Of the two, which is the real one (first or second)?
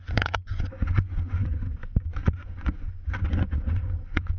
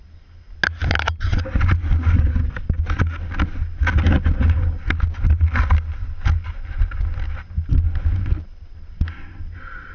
second